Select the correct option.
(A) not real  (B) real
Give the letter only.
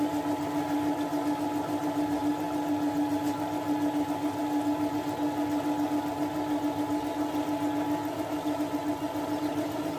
B